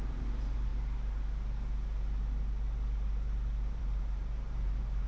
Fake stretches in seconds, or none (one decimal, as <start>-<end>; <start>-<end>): 0.0-0.7; 3.8-5.1